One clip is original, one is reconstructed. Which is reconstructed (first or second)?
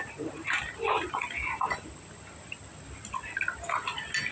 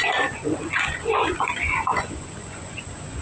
second